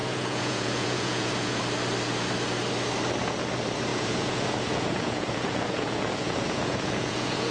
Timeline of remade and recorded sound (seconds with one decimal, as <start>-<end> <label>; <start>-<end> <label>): 0.0-1.6 remade; 1.6-3.9 recorded; 3.9-7.5 remade